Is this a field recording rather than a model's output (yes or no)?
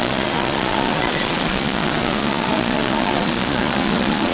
no